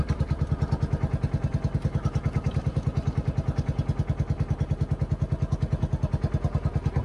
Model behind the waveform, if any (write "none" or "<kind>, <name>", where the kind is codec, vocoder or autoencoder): none